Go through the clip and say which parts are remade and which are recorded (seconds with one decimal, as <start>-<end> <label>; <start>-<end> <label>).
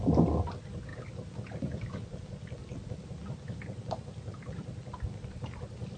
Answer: 0.0-6.0 recorded